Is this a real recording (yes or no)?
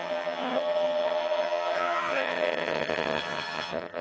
no